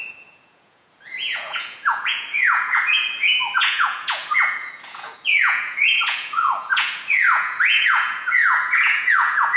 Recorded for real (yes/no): no